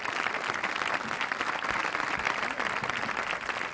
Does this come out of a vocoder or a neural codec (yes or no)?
no